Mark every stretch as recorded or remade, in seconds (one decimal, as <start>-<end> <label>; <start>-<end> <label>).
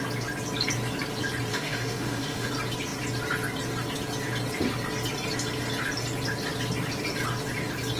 0.0-1.5 recorded; 1.5-2.5 remade; 2.5-8.0 recorded